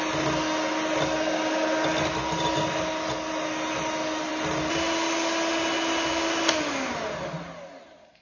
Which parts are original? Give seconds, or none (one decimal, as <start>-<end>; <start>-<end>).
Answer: 0.0-8.2